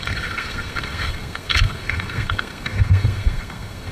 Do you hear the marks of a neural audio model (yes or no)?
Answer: yes